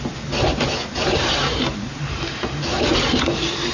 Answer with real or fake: fake